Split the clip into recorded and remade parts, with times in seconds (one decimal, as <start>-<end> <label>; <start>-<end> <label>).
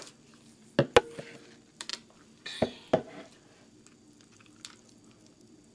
0.0-1.9 recorded; 1.9-3.8 remade; 3.8-5.7 recorded